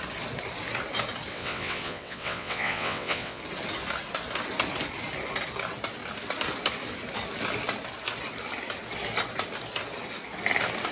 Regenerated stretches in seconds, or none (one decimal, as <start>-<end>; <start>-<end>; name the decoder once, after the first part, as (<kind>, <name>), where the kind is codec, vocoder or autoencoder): 1.3-3.4 (vocoder, WaveNeXt)